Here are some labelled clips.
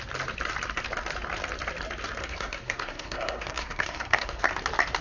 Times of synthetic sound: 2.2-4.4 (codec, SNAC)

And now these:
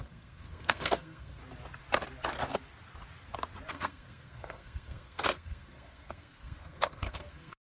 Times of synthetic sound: 0.0-1.4 (codec, SNAC); 3.7-7.8

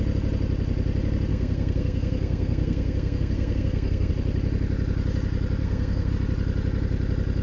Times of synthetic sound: 1.3-4.1 (codec, SNAC); 5.6-6.1

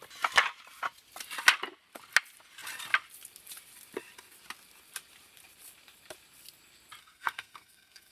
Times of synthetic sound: 7.0-8.1 (codec, SNAC)

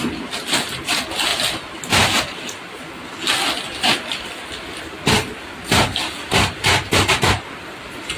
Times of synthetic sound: none

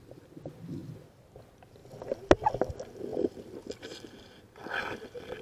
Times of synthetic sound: none